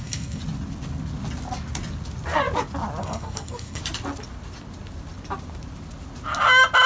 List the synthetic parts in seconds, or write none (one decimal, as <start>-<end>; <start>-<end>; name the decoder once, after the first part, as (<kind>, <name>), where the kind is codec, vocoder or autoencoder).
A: 0.0-0.4 (codec, SNAC); 3.0-3.8

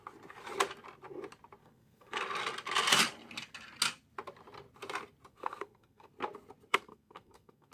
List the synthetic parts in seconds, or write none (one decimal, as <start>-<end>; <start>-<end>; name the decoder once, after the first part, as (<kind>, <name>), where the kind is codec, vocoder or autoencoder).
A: 1.6-2.2 (codec, SNAC); 5.3-6.1; 6.7-7.7

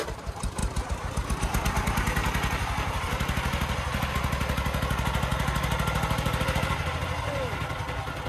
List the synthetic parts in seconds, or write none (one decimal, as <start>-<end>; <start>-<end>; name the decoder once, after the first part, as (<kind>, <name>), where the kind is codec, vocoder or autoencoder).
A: none